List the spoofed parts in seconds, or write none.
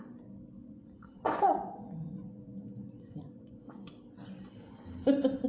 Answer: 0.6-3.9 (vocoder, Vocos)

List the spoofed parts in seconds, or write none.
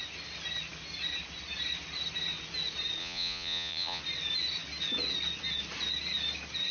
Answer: 3.0-4.0 (vocoder, Vocos)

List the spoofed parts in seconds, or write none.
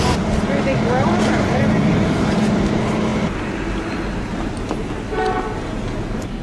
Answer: none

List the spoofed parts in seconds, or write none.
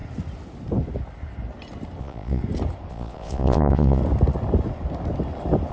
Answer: 2.0-2.4 (vocoder, Vocos); 2.9-4.0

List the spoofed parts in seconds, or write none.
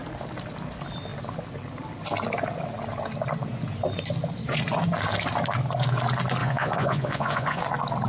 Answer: 6.4-7.6 (vocoder, Vocos)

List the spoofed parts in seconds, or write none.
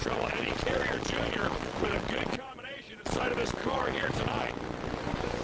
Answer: 0.0-3.2 (vocoder, Vocos); 3.6-4.5